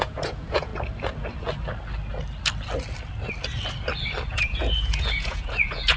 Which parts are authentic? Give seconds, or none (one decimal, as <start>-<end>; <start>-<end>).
0.7-4.3